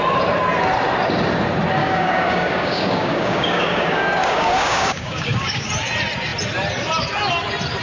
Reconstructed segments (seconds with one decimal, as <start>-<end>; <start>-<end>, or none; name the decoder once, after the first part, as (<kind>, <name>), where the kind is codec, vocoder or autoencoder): 1.8-5.7 (codec, DAC)